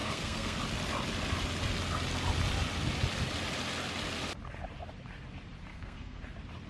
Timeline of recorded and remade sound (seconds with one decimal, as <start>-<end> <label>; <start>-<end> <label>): 0.0-0.6 remade; 0.6-5.7 recorded; 5.7-6.2 remade; 6.2-6.7 recorded